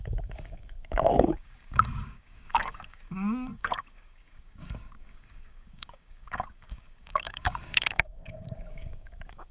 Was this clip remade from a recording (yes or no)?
yes